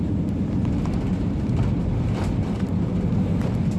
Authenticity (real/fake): real